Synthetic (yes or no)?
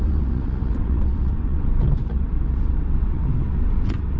yes